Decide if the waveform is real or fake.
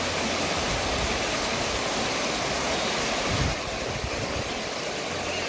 real